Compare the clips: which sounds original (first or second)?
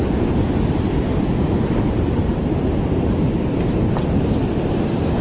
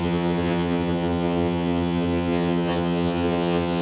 first